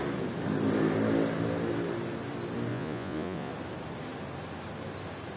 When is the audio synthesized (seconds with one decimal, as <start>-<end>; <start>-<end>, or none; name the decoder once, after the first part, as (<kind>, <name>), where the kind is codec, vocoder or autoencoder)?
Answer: 2.7-3.5 (vocoder, Vocos)